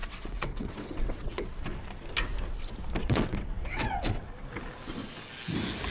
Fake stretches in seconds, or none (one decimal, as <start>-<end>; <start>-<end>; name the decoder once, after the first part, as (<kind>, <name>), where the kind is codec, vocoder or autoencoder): 0.0-1.5 (vocoder, WaveNeXt); 3.0-4.2